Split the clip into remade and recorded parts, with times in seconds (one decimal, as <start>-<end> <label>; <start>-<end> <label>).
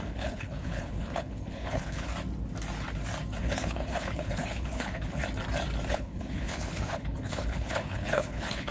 0.0-2.1 remade; 2.1-3.4 recorded; 3.4-5.2 remade; 5.2-5.9 recorded; 5.9-8.7 remade